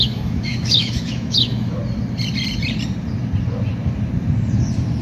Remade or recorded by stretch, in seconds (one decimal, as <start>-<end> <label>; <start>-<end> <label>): 0.0-1.8 remade; 1.8-5.0 recorded